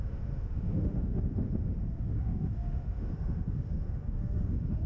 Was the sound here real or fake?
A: fake